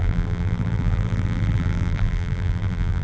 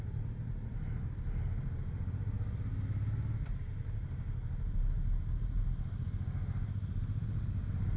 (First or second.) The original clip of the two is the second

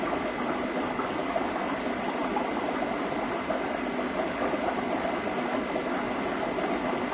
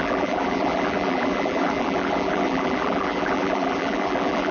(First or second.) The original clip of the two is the first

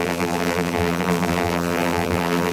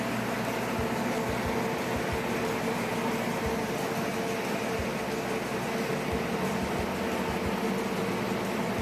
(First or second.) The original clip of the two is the second